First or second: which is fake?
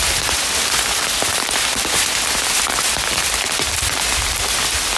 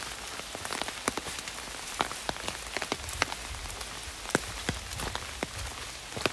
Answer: first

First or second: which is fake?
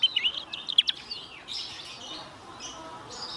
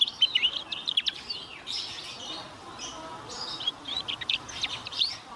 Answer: second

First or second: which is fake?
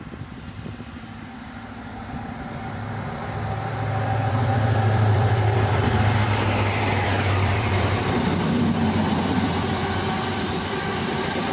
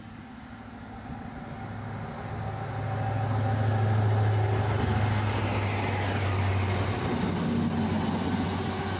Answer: first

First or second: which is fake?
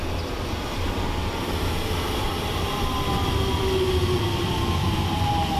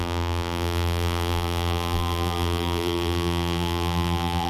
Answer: second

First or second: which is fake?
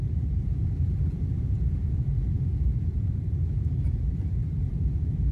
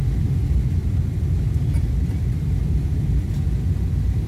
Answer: first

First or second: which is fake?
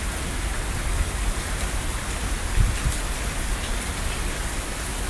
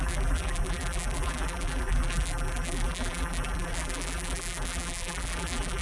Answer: second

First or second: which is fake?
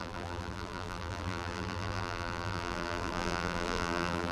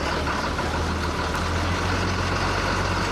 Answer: first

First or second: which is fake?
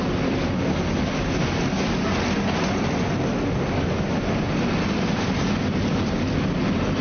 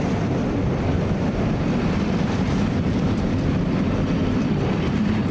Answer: second